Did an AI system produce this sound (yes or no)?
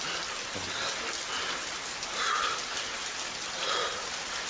no